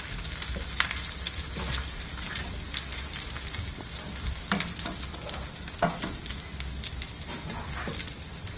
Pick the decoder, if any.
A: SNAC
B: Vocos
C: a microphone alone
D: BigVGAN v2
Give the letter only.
C